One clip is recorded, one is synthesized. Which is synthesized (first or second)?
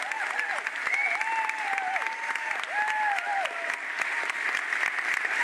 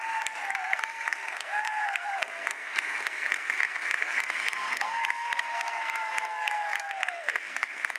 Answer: second